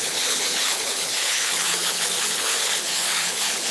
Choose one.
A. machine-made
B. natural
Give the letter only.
A